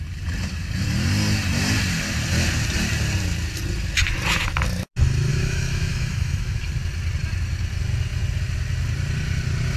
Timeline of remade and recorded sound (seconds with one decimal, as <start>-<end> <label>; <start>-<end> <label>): 0.0-5.3 recorded; 5.3-6.6 remade; 6.6-9.8 recorded